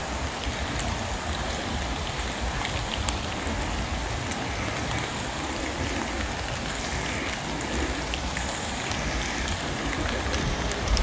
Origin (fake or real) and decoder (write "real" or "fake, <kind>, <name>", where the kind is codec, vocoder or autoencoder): real